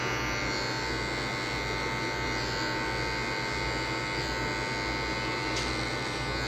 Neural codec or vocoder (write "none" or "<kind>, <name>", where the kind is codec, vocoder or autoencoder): none